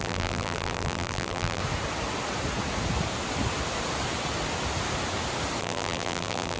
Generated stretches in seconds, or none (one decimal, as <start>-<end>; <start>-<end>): 0.0-1.6; 5.6-6.6